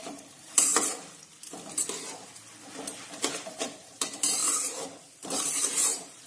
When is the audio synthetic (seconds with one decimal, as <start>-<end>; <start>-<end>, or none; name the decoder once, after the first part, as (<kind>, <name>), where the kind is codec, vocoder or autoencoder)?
0.0-0.7 (vocoder, BigVGAN v2); 3.3-4.4; 5.0-6.3